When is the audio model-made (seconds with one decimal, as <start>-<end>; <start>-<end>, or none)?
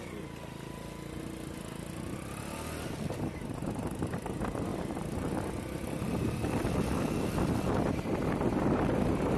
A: none